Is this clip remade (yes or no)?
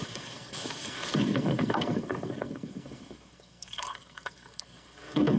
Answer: yes